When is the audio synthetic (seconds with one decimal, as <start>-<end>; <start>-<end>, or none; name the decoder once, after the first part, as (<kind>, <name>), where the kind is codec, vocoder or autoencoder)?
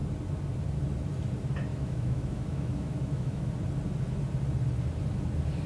1.7-3.5 (autoencoder, DAC-VAE)